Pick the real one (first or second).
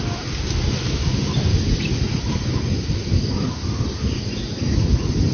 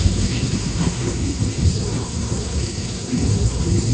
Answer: first